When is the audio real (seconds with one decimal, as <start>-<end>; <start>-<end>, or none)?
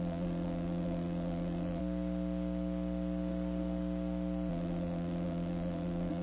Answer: 1.8-4.5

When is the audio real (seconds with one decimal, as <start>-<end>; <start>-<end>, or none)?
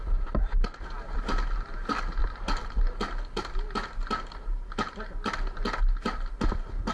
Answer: 0.0-6.9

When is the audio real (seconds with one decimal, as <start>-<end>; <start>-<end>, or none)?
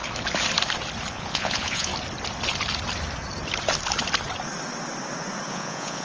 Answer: 0.0-1.1; 1.9-5.5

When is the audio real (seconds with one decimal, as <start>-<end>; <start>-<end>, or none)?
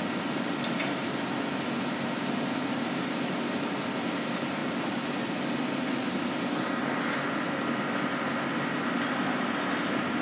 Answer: 0.0-10.2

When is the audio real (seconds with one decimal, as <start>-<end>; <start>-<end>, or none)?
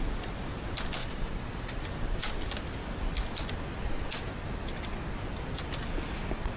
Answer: 0.0-1.0; 1.8-6.6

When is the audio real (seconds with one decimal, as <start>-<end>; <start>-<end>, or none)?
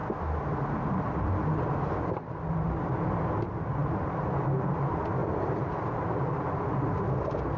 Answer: 0.0-7.6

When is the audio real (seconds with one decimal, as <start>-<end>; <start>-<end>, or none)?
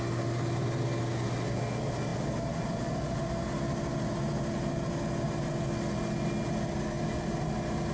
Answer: 0.0-7.9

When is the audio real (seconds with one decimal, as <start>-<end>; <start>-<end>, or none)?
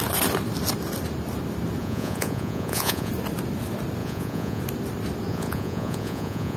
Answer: 0.0-1.8; 3.1-4.0; 4.6-5.3